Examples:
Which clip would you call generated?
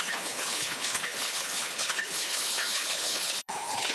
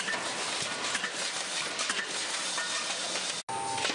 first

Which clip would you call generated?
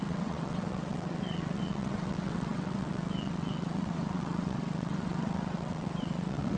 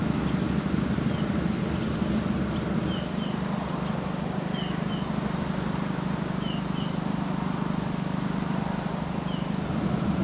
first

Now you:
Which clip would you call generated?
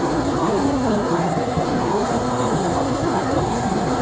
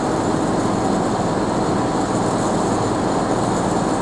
first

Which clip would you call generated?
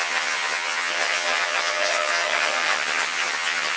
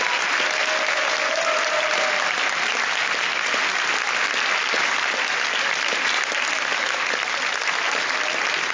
first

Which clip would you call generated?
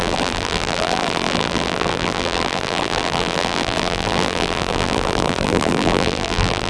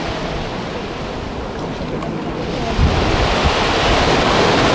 first